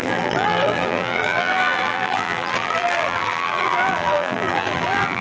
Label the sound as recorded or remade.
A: remade